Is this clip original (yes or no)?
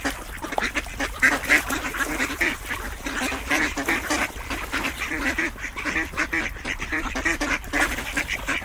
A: no